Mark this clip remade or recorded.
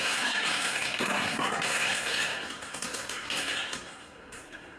remade